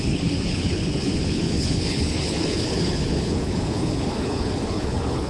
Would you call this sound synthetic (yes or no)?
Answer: yes